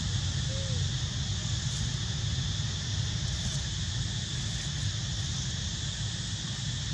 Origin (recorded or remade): recorded